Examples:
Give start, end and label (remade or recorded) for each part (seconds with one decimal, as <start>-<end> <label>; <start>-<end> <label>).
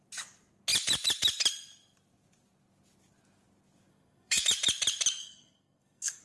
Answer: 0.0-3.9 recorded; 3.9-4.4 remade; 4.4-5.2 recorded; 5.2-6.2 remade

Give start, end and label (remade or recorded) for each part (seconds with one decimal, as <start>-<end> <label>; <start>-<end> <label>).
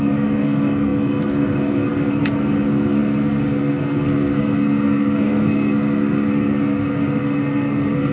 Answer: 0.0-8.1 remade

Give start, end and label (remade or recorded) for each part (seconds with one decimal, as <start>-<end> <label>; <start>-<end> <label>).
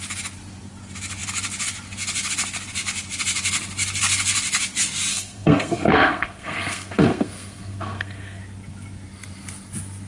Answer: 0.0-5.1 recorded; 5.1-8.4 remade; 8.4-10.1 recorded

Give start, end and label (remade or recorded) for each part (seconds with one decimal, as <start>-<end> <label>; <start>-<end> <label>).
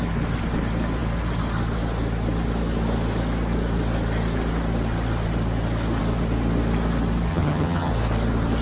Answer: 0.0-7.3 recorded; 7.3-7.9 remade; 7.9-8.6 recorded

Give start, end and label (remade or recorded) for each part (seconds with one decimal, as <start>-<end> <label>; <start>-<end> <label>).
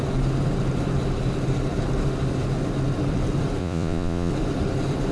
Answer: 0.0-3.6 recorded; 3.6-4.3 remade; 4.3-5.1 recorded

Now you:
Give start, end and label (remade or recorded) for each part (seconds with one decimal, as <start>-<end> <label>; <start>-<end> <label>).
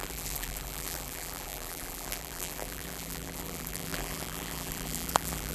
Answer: 0.0-5.5 remade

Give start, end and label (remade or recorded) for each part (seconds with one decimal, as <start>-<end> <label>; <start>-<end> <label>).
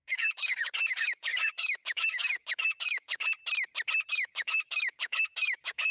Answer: 0.0-3.4 remade; 3.4-4.1 recorded; 4.1-5.9 remade